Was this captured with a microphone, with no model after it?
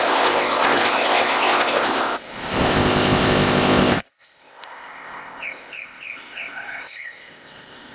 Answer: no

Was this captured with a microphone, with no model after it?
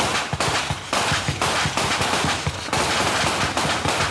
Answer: yes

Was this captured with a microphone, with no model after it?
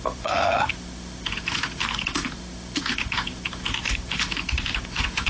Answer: no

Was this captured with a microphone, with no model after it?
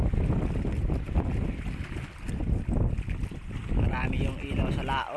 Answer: yes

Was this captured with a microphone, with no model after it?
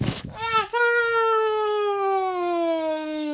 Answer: no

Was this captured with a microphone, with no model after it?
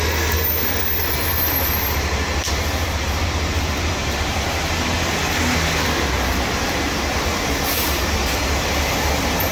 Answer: yes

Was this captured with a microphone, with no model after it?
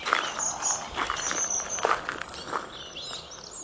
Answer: yes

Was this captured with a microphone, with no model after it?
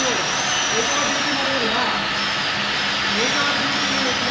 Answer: yes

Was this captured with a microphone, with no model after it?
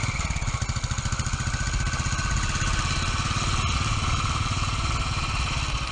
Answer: yes